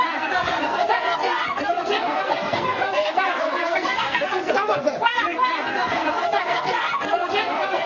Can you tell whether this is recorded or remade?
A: remade